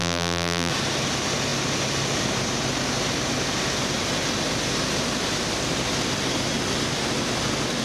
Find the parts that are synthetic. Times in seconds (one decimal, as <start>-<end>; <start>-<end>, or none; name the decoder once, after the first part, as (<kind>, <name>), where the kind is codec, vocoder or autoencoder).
0.0-0.7 (vocoder, BigVGAN v2)